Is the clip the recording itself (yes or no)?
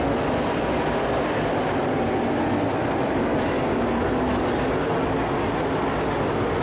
yes